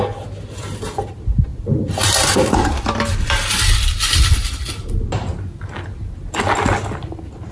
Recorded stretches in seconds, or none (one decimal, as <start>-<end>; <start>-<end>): 0.0-1.5; 4.7-7.5